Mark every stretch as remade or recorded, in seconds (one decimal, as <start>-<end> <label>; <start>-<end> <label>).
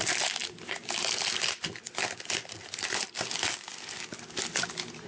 0.0-5.1 recorded